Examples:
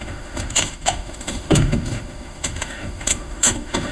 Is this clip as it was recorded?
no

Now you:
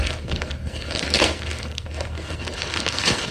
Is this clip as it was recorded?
no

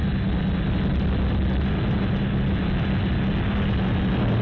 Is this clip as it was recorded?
yes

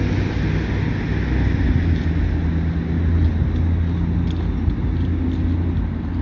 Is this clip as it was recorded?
yes